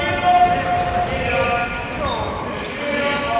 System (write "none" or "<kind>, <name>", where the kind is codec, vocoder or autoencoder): none